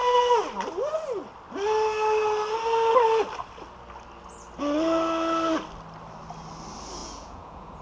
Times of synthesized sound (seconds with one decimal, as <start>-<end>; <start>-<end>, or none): 7.0-7.8